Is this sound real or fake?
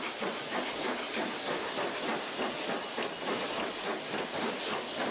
real